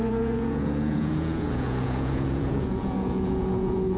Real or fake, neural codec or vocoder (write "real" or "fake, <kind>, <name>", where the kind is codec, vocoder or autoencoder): fake, vocoder, Vocos